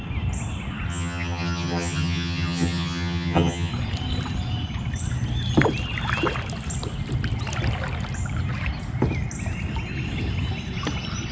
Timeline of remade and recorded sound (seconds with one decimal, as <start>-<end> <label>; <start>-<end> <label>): 0.0-0.9 recorded; 0.9-3.7 remade; 3.7-11.3 recorded

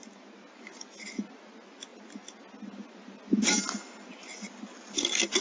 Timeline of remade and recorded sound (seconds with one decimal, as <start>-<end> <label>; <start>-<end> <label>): 0.0-5.4 recorded

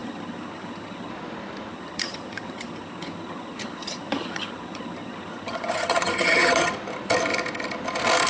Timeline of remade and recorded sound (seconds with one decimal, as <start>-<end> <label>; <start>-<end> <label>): 0.0-1.1 remade; 1.1-1.7 recorded; 1.7-6.7 remade; 6.7-8.3 recorded

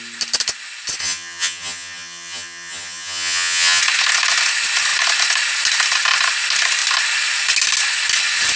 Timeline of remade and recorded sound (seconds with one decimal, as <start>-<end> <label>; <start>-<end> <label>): 0.0-1.0 recorded; 1.0-3.8 remade; 3.8-8.6 recorded

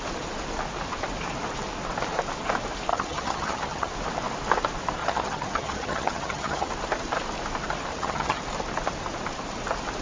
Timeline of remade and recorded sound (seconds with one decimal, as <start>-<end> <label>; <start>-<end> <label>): 0.0-2.9 recorded; 2.9-3.9 remade; 3.9-5.0 recorded; 5.0-6.7 remade; 6.7-7.9 recorded; 7.9-8.4 remade; 8.4-10.0 recorded

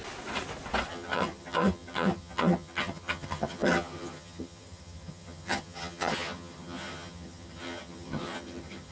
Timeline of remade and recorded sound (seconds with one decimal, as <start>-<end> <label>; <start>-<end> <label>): 0.0-0.9 recorded; 0.9-8.9 remade

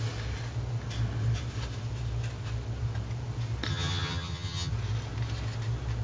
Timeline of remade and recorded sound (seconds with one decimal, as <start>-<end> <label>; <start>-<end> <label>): 0.0-3.7 recorded; 3.7-4.7 remade; 4.7-6.0 recorded